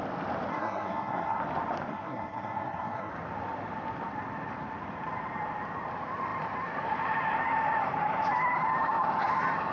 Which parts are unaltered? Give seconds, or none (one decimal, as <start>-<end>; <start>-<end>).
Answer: 0.0-0.5; 1.4-1.9; 3.1-9.7